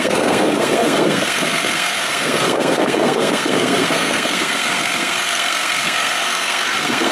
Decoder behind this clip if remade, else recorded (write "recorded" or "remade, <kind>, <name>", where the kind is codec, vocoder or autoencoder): remade, codec, SNAC